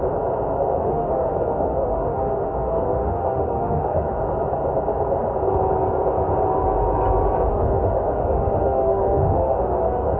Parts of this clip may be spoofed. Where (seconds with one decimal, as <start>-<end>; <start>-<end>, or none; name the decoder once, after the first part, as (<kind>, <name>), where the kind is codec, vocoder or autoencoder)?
0.8-4.2 (autoencoder, DAC-VAE); 7.5-10.2